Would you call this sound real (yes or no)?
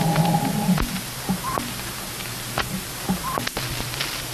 yes